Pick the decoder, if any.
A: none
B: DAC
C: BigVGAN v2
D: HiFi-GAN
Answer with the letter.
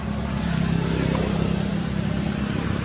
A